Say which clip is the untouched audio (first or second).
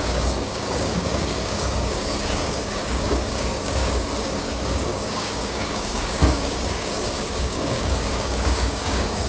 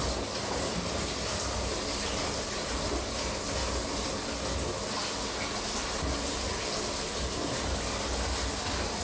second